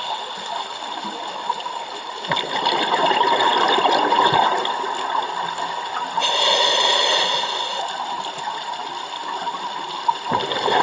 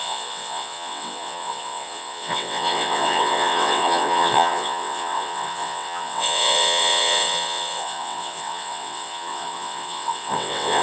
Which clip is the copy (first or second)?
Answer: second